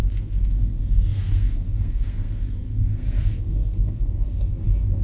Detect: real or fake fake